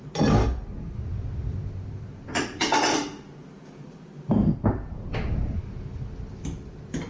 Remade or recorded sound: recorded